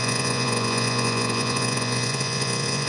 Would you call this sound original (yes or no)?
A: no